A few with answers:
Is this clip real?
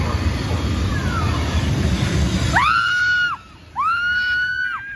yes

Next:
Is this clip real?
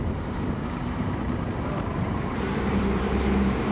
no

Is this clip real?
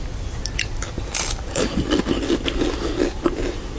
yes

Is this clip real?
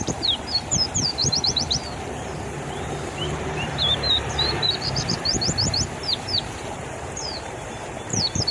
no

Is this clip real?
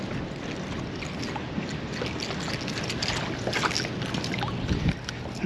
yes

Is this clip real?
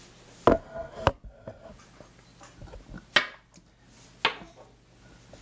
yes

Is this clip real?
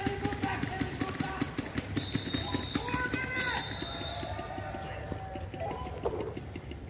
no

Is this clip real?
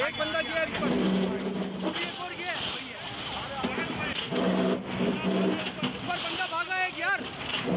yes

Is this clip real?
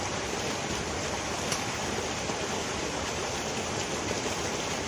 yes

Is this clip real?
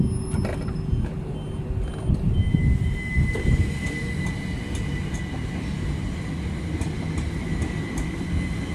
yes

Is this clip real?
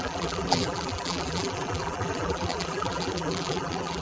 no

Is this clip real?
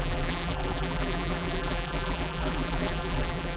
no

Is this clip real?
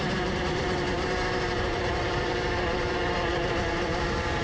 no